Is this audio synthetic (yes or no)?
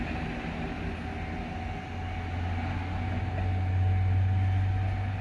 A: no